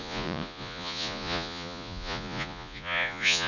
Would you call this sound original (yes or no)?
no